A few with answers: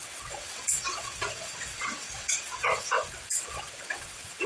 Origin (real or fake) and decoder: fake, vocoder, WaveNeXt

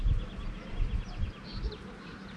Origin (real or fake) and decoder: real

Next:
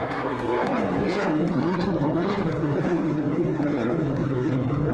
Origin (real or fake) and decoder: fake, codec, SNAC